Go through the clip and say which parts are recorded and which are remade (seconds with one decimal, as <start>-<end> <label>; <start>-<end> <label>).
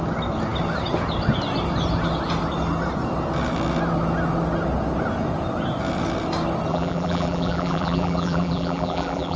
0.0-6.7 recorded; 6.7-9.4 remade